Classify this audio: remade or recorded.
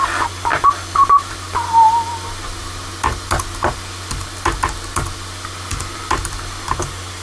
recorded